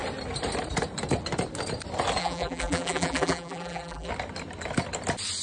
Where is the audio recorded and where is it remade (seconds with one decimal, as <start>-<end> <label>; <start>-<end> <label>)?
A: 0.0-2.2 recorded; 2.2-4.1 remade; 4.1-5.4 recorded